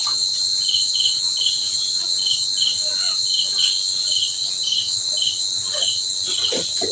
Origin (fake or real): real